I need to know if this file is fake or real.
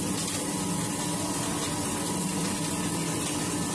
real